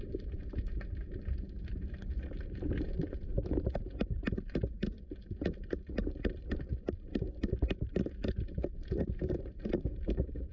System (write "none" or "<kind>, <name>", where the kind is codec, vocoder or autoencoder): vocoder, BigVGAN v2